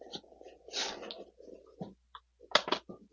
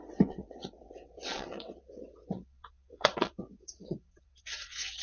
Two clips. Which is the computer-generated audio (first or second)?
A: second